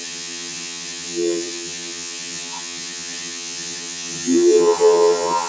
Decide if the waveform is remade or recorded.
remade